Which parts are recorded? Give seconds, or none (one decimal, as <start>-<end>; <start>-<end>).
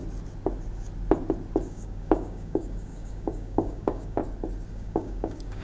0.0-1.7; 4.2-4.7